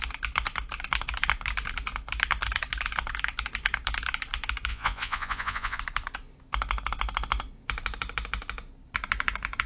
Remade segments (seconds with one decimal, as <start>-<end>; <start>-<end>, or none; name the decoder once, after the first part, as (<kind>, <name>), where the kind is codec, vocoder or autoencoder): 4.7-5.8 (vocoder, Vocos)